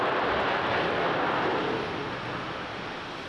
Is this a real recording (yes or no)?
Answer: yes